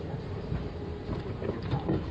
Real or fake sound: fake